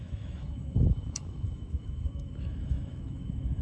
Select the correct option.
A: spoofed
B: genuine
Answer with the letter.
A